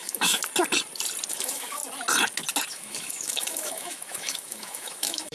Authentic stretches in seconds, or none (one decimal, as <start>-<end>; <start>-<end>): 0.4-1.3; 1.8-2.7